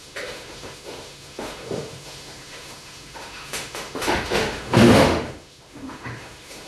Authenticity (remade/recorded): remade